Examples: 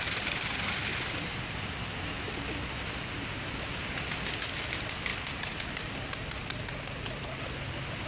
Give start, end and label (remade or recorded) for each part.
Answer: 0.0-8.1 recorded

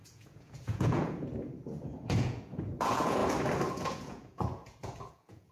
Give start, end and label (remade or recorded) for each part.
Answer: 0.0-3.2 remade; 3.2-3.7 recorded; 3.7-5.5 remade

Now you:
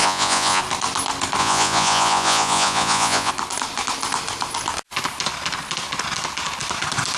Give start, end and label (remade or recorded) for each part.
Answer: 0.0-0.6 remade; 0.6-1.4 recorded; 1.4-3.3 remade; 3.3-7.2 recorded

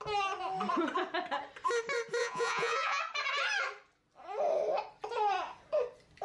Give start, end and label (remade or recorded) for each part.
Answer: 0.0-2.2 recorded; 2.2-3.0 remade; 3.0-6.2 recorded

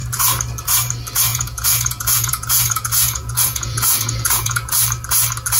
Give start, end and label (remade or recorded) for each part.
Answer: 0.0-1.3 recorded; 1.3-4.7 remade; 4.7-5.6 recorded

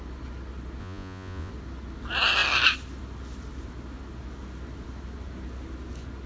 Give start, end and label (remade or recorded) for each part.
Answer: 0.0-0.8 recorded; 0.8-1.5 remade; 1.5-6.3 recorded